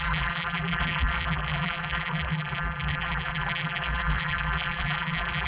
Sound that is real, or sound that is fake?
fake